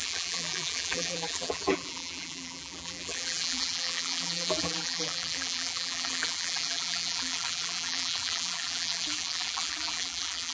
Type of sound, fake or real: fake